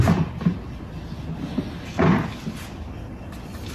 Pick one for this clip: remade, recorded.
recorded